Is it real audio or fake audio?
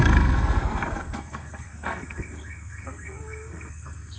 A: fake